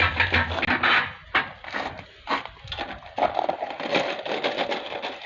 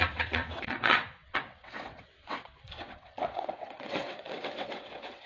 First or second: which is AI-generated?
second